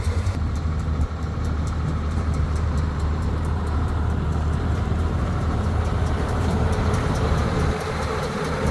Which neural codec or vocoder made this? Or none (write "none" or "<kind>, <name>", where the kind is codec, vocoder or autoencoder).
vocoder, BigVGAN v2